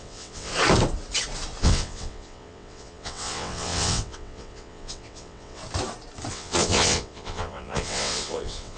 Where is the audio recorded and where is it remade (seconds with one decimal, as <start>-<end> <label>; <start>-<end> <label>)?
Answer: 0.0-0.5 remade; 0.5-1.6 recorded; 1.6-5.6 remade; 5.6-6.3 recorded; 6.3-8.8 remade